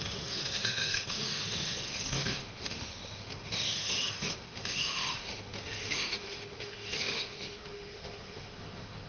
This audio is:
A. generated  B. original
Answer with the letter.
A